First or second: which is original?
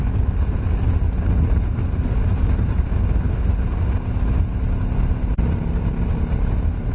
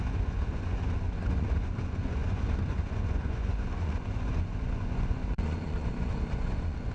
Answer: first